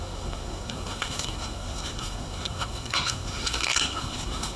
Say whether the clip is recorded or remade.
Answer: remade